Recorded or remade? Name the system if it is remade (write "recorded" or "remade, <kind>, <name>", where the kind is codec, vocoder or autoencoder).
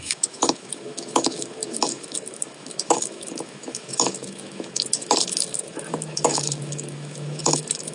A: remade, autoencoder, DAC-VAE